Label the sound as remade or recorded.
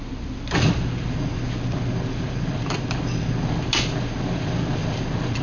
remade